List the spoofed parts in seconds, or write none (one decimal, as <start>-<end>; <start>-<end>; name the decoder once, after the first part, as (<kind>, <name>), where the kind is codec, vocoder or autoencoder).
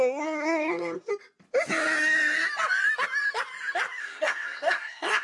0.0-1.1 (codec, SNAC); 4.0-5.2